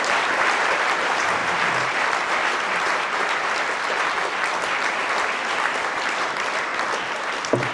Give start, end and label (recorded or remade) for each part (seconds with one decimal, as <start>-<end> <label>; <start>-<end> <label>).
0.0-1.4 remade; 1.4-5.1 recorded; 5.1-7.7 remade